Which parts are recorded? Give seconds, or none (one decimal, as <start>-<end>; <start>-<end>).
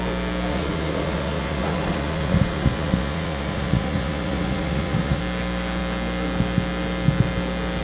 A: 0.0-0.5; 5.2-7.8